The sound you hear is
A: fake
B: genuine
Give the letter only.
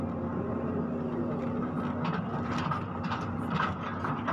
B